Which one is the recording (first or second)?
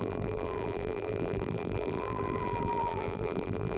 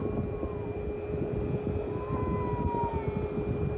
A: second